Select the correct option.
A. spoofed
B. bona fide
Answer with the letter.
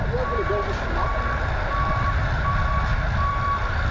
B